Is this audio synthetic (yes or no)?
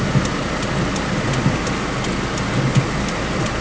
no